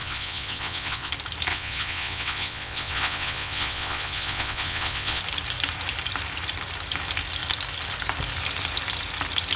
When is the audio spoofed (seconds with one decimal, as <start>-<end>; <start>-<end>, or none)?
0.0-1.1; 1.5-5.2